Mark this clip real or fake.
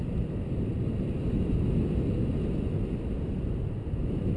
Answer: real